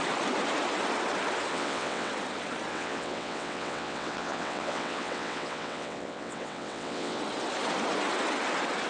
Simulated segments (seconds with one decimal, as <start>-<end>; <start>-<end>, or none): 1.5-2.1; 2.7-7.2